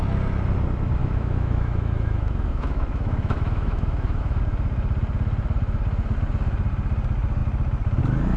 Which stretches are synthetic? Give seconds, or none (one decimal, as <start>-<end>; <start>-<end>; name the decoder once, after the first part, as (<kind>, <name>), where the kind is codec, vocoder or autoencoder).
1.0-4.4 (autoencoder, DAC-VAE)